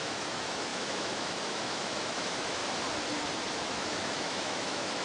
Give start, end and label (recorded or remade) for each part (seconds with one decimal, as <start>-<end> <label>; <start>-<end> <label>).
0.0-2.6 remade; 2.6-3.5 recorded; 3.5-5.0 remade